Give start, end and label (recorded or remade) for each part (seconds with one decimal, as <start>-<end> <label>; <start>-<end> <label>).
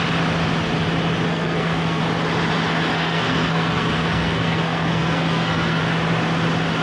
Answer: 0.0-1.3 recorded; 1.3-2.0 remade; 2.0-2.9 recorded; 2.9-5.8 remade; 5.8-6.8 recorded